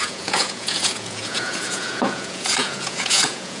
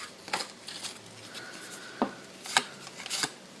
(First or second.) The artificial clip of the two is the first